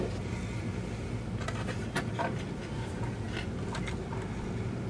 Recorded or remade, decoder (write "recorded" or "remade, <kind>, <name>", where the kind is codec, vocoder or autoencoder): recorded